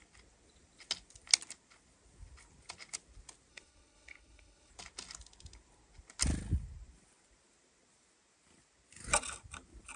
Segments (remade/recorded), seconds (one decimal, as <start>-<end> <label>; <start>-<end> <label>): 0.0-3.5 recorded; 3.5-4.7 remade; 4.7-10.0 recorded